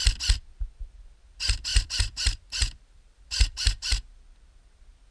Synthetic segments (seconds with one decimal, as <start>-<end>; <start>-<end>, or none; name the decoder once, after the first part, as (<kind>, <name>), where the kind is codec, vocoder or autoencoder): 1.7-4.2 (vocoder, BigVGAN v2)